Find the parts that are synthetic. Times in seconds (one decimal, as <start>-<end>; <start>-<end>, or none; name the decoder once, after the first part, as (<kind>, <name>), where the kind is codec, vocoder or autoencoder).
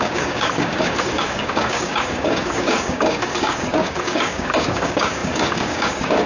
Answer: 0.0-6.3 (codec, DAC)